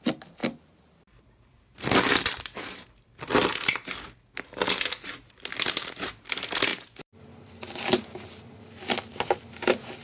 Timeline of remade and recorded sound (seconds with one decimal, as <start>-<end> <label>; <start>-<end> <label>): 0.0-0.4 recorded; 0.4-2.9 remade; 2.9-6.7 recorded; 6.7-7.2 remade; 7.2-10.0 recorded